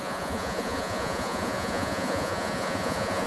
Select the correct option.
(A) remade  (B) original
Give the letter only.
A